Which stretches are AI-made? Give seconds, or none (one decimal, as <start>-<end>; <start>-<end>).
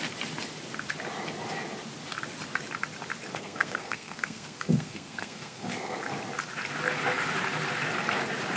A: 3.3-6.0